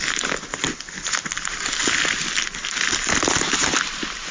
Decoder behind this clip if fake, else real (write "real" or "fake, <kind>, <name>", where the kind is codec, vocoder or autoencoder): real